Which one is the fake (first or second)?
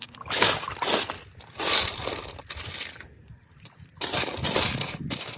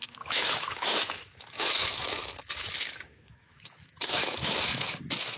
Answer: second